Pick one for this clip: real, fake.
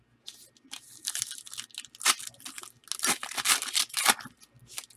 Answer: real